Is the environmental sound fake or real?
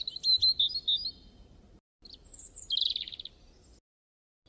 real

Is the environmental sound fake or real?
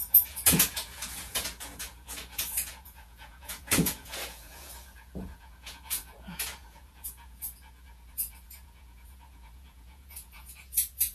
fake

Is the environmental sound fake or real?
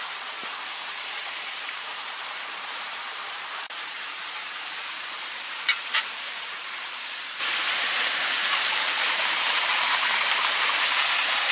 fake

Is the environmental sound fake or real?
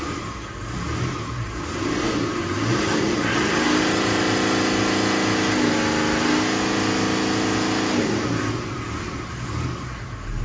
real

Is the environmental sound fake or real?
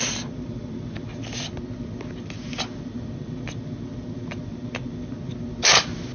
real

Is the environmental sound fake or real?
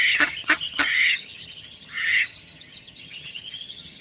fake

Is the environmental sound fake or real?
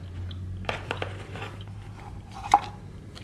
real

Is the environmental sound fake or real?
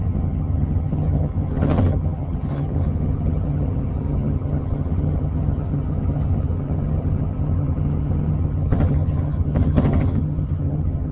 fake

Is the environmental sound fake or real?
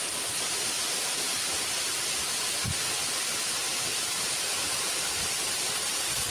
real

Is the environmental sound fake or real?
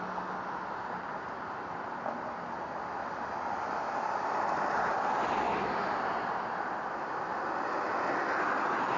real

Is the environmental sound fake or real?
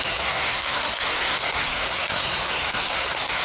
fake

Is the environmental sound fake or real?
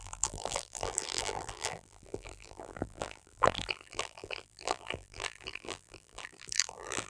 fake